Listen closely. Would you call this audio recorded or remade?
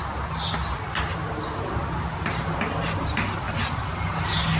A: recorded